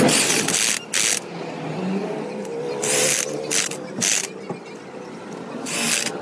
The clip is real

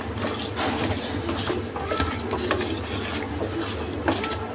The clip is real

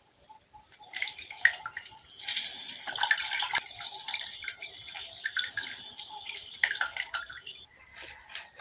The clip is fake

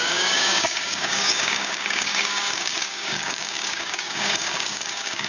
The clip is fake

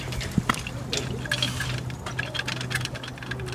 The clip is real